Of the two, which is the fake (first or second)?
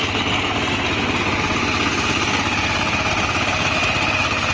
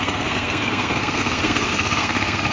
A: second